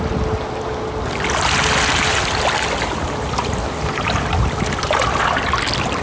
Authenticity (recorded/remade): recorded